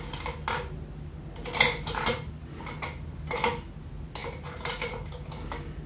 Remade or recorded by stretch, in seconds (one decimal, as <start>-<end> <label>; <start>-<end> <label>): 0.0-5.9 recorded